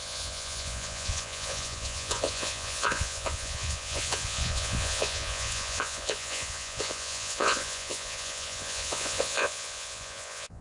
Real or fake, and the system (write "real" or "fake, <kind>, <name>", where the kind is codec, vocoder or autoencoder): fake, vocoder, Vocos